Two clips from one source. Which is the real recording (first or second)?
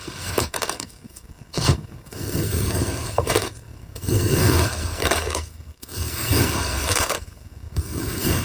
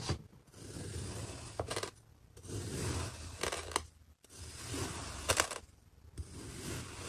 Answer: second